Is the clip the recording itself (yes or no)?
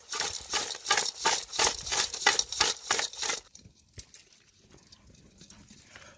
yes